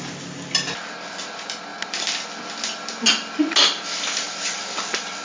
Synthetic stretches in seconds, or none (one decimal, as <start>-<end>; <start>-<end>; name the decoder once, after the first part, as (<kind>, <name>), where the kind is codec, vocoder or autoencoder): none